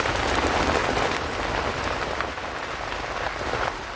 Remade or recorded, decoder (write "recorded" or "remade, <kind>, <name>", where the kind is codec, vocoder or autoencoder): recorded